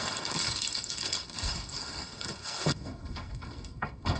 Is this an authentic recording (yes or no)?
no